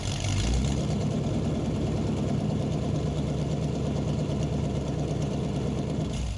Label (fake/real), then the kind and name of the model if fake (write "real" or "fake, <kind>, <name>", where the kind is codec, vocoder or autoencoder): fake, vocoder, BigVGAN v2